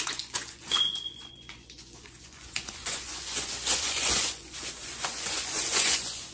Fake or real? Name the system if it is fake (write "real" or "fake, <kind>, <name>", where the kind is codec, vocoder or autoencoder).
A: fake, vocoder, Vocos